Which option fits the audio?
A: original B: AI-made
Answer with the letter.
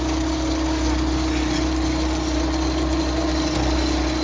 A